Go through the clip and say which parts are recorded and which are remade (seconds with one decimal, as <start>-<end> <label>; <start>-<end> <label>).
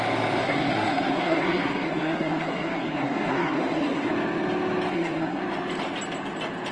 0.0-0.4 recorded; 0.4-4.1 remade; 4.1-4.9 recorded; 4.9-5.4 remade; 5.4-6.7 recorded